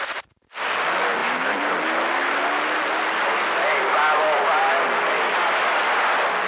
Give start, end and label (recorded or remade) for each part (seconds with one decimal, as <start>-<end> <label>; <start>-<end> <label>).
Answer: 0.0-6.5 recorded